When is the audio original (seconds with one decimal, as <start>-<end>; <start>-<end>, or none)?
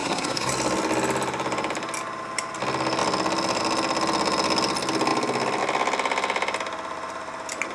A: 0.5-7.7